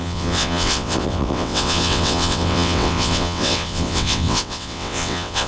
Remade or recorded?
remade